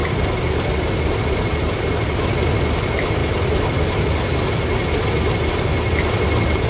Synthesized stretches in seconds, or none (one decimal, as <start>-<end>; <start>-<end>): none